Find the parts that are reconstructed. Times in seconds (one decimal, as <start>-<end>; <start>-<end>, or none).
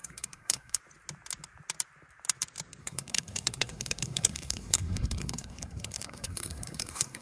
0.0-0.8; 2.8-7.2